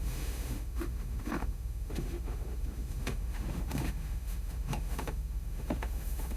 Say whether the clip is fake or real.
fake